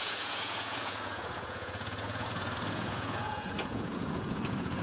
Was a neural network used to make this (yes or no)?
yes